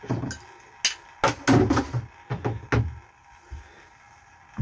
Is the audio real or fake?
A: real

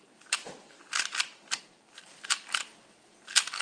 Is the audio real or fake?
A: real